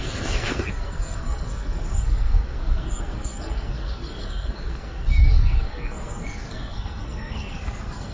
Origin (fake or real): fake